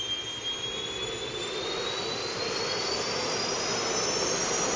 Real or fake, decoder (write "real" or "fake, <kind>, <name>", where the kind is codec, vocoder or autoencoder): real